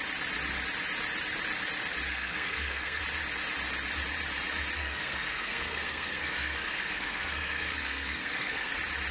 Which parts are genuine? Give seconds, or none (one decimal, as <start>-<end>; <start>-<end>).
0.0-2.1; 3.0-4.8; 8.7-9.1